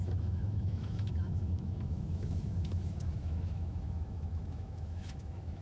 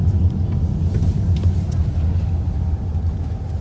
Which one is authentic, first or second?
second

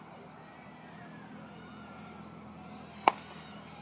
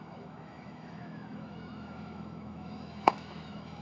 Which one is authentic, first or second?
first